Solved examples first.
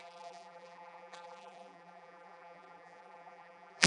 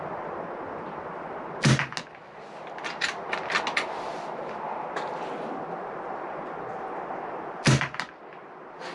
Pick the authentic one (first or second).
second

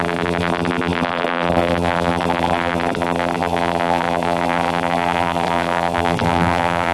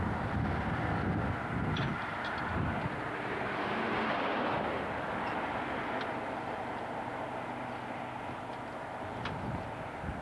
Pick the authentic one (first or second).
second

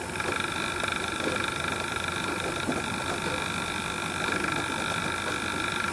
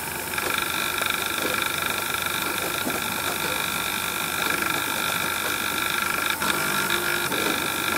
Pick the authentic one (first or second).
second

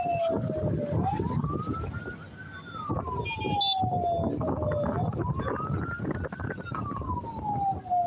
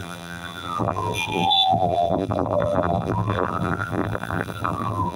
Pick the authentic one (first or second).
first